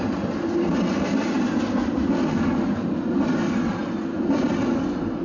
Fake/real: real